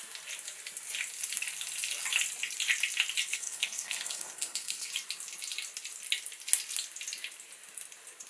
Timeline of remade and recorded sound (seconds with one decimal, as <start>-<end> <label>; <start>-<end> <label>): 0.0-3.3 recorded; 3.3-4.9 remade; 4.9-8.3 recorded